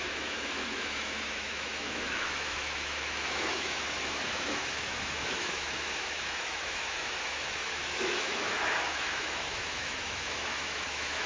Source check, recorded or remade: remade